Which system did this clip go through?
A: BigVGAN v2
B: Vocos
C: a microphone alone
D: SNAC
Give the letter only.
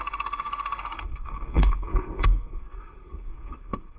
D